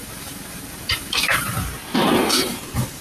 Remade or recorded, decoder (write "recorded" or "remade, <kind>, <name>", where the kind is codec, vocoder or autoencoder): remade, vocoder, BigVGAN v2